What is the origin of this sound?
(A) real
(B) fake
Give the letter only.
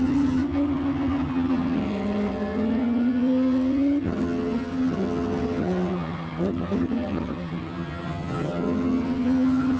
B